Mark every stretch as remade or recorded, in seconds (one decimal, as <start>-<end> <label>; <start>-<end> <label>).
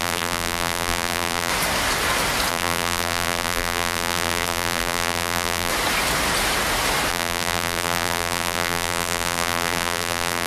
0.0-1.5 remade; 1.5-2.5 recorded; 2.5-5.7 remade; 5.7-7.1 recorded; 7.1-10.5 remade